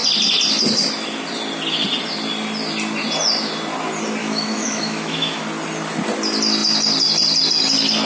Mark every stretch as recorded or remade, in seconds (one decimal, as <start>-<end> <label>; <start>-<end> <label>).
0.0-4.2 recorded; 4.2-5.4 remade; 5.4-8.1 recorded